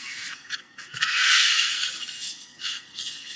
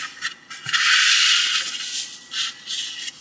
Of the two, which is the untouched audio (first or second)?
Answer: second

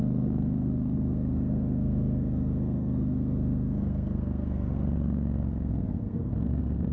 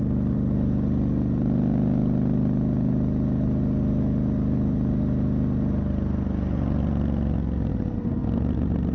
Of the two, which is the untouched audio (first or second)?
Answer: second